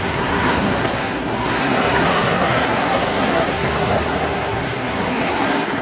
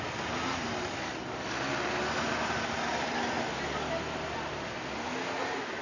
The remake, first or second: first